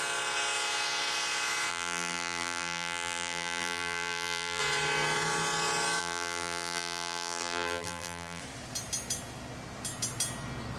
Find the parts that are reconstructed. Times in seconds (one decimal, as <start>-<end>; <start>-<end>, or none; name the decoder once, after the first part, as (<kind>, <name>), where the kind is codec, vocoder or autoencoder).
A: 1.7-4.6 (vocoder, BigVGAN v2); 6.0-8.4

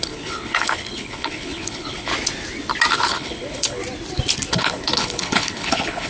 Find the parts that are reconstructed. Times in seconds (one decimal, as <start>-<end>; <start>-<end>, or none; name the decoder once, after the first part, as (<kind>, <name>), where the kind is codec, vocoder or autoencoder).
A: 0.0-2.1 (codec, HILCodec); 2.9-3.8; 4.5-6.1

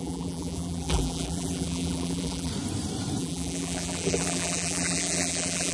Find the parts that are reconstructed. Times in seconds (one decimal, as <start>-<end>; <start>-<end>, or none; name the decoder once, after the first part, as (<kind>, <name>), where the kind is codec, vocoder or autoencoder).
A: 0.0-2.5 (vocoder, BigVGAN v2); 3.2-5.7